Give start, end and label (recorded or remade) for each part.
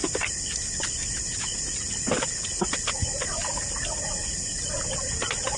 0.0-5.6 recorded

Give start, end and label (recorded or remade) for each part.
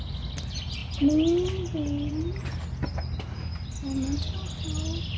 0.0-5.2 recorded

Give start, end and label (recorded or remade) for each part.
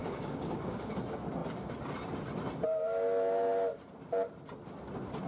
0.0-0.9 remade; 0.9-5.3 recorded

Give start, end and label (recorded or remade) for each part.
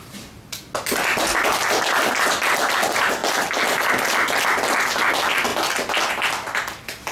0.0-7.1 recorded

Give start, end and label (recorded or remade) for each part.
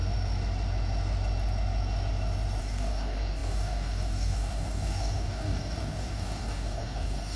0.0-2.6 recorded; 2.6-7.4 remade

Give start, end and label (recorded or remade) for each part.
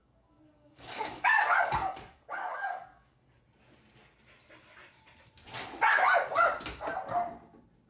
0.0-3.4 remade; 3.4-7.9 recorded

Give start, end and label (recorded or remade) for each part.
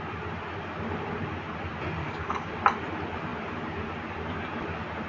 0.0-2.0 recorded; 2.0-2.5 remade; 2.5-5.1 recorded